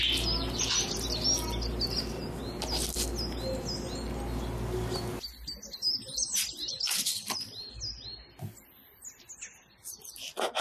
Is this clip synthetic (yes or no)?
no